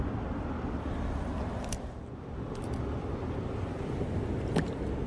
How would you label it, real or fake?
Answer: real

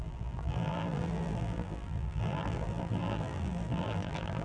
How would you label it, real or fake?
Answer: fake